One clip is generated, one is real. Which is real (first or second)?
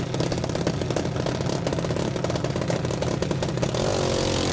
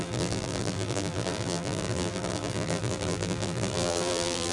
first